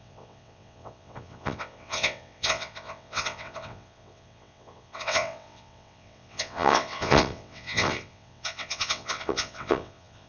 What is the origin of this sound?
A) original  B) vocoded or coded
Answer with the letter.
B